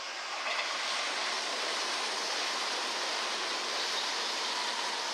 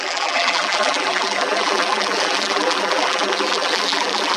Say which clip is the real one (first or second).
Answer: first